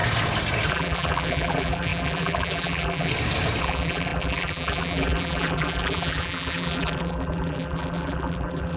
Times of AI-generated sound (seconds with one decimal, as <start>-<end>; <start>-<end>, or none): 0.7-3.1; 3.6-8.8